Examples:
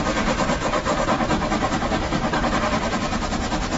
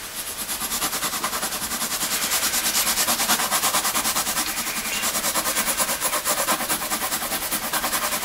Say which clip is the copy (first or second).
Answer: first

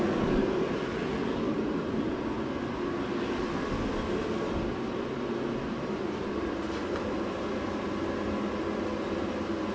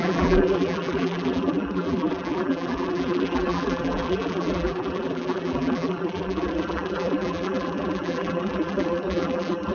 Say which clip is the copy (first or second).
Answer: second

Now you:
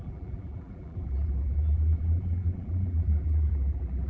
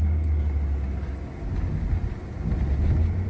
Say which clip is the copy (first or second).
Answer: first